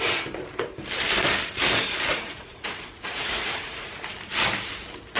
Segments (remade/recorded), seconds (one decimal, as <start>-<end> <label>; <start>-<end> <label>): 0.0-2.1 recorded; 2.1-4.0 remade; 4.0-5.2 recorded